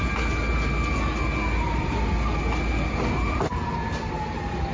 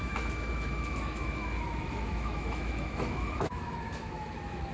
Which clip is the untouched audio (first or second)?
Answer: first